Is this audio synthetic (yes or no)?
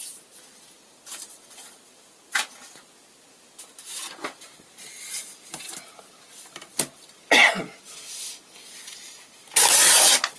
no